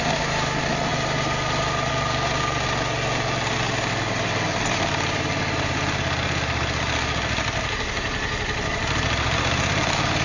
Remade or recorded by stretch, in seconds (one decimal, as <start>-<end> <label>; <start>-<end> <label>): 0.0-10.2 recorded